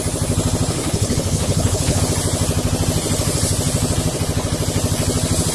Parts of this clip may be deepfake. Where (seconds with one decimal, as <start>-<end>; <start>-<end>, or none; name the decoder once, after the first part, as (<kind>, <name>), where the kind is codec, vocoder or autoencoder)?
0.8-2.0 (codec, HILCodec)